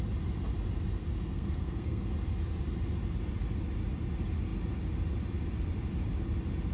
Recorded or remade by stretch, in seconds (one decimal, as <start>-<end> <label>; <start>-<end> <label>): 0.0-1.0 recorded; 1.0-2.1 remade; 2.1-6.7 recorded